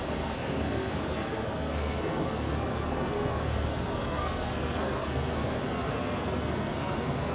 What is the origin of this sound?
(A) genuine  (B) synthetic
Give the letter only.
B